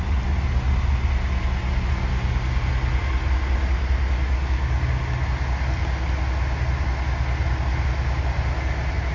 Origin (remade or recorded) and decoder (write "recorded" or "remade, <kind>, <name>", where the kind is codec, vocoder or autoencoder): recorded